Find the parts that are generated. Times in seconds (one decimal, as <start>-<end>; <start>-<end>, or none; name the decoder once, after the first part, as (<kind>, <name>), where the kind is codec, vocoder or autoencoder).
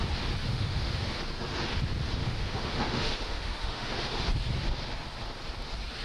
0.5-1.2 (autoencoder, DAC-VAE); 2.2-4.1